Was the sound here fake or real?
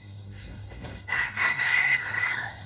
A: fake